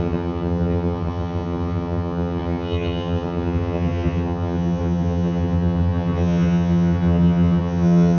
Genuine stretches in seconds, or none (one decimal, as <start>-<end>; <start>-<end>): none